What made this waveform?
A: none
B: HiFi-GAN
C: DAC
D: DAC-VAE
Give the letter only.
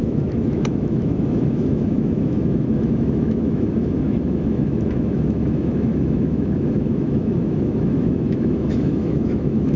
D